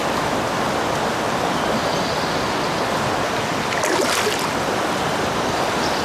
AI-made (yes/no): no